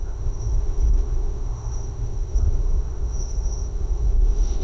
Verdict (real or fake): fake